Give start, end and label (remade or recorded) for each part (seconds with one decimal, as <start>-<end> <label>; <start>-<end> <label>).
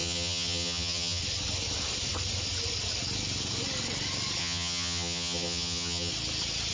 0.0-1.2 remade; 1.2-4.4 recorded; 4.4-6.1 remade; 6.1-6.7 recorded